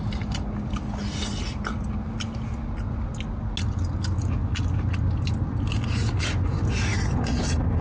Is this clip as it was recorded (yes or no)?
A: yes